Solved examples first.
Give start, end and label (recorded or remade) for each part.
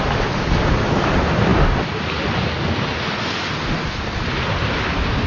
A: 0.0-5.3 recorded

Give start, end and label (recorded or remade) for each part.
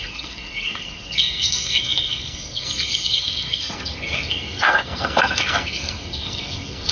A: 0.0-6.9 remade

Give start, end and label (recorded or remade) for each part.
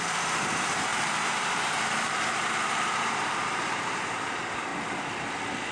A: 0.0-4.7 remade; 4.7-5.7 recorded